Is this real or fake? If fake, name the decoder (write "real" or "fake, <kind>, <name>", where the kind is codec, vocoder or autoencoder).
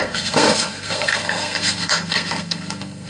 fake, codec, SNAC